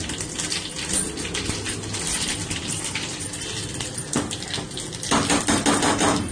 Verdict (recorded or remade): recorded